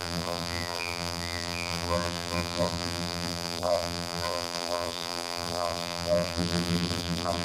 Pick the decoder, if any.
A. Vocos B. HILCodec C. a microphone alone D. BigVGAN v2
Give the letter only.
D